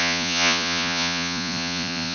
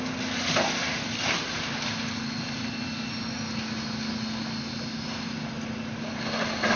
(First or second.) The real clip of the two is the second